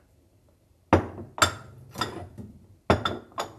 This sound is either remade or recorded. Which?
recorded